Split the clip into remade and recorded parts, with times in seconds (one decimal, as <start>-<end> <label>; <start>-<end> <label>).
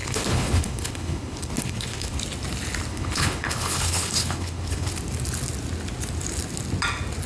0.0-2.2 remade; 2.2-2.9 recorded; 2.9-4.9 remade; 4.9-7.3 recorded